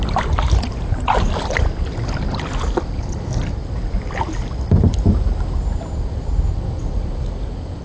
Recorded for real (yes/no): yes